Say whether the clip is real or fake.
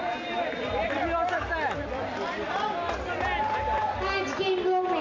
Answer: real